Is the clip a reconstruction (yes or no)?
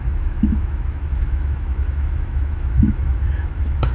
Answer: yes